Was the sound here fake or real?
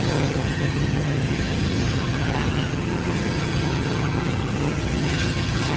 fake